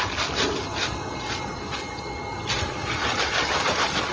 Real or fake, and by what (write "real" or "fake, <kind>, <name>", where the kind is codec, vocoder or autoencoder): real